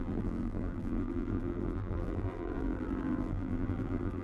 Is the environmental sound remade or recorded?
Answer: remade